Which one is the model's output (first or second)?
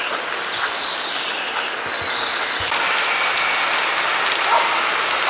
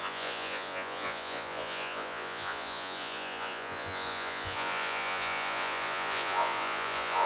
second